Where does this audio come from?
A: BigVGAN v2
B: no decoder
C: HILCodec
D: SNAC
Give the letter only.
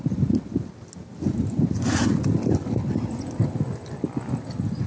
B